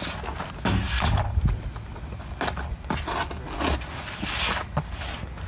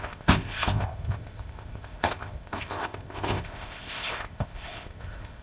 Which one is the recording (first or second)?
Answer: first